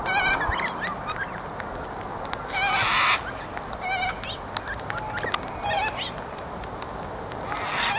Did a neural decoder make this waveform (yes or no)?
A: no